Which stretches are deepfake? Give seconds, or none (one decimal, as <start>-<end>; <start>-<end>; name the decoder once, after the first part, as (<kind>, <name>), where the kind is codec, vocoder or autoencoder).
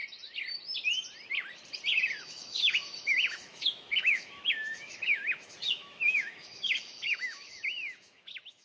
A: 2.2-8.6 (autoencoder, DAC-VAE)